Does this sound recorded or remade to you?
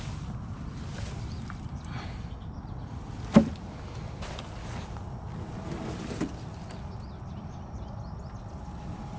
recorded